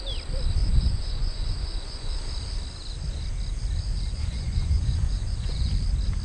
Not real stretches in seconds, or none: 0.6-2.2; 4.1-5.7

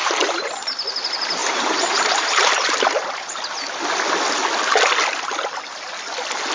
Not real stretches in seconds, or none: 0.0-0.7; 1.4-3.4

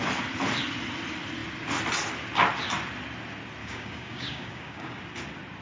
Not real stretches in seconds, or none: 3.6-5.0

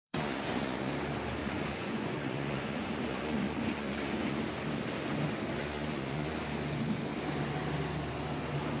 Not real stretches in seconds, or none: 0.0-0.9; 1.4-4.4; 5.6-6.4

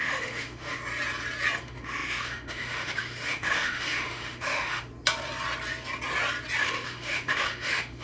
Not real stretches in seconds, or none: 0.0-0.8; 1.6-4.9; 6.6-8.0

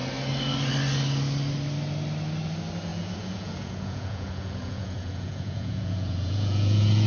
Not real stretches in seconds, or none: 2.9-7.1